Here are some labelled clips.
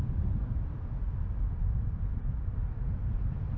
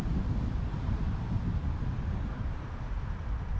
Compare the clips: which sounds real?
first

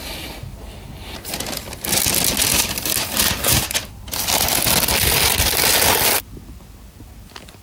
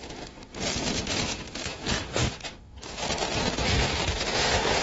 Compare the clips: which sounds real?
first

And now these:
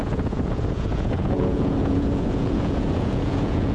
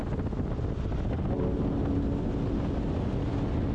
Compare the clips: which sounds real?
second